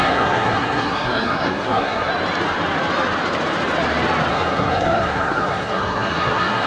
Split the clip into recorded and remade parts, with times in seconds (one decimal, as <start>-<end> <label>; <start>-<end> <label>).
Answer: 0.0-2.1 remade; 2.1-4.3 recorded; 4.3-6.7 remade